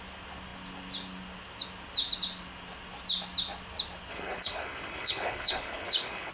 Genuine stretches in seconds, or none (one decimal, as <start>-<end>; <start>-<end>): 0.0-4.1